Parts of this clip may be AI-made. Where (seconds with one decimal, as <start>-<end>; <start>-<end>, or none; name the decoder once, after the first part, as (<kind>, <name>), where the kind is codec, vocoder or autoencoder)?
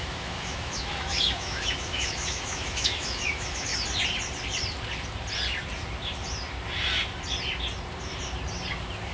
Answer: 0.0-3.7 (autoencoder, DAC-VAE)